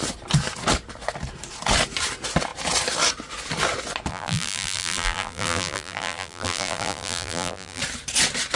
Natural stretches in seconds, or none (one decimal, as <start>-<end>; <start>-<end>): 0.0-4.1; 7.8-8.6